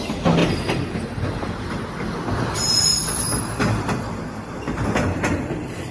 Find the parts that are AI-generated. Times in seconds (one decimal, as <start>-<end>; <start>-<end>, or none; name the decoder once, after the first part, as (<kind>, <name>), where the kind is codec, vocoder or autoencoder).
0.4-1.4 (vocoder, BigVGAN v2)